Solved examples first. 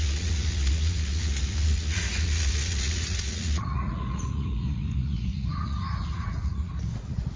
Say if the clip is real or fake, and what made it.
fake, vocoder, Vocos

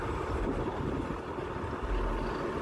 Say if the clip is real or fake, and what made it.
real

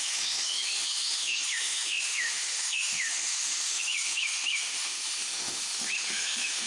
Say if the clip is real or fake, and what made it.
fake, autoencoder, DAC-VAE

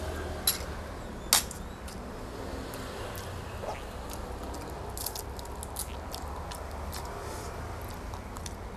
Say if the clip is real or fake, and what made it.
real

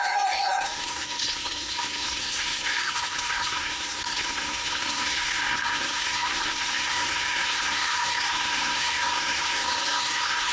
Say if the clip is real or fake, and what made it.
fake, codec, SNAC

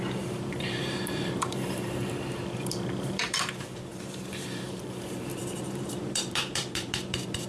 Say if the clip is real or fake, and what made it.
fake, vocoder, BigVGAN v2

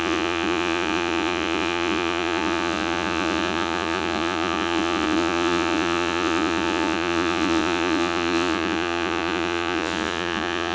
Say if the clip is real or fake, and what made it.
fake, vocoder, Vocos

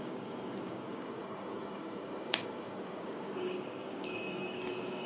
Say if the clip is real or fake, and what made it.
fake, codec, DAC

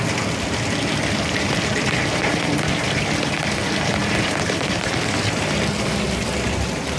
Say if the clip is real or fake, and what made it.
real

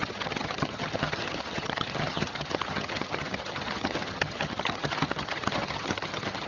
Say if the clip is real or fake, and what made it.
fake, vocoder, HiFi-GAN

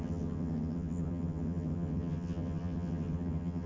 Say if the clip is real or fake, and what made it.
fake, vocoder, HiFi-GAN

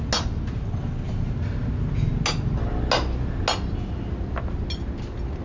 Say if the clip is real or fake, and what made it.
real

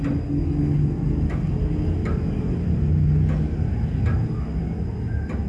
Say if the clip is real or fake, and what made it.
real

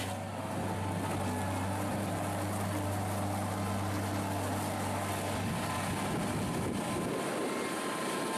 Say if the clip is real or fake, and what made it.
real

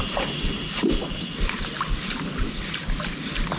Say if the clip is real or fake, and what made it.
real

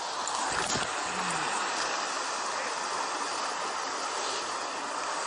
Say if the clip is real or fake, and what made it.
real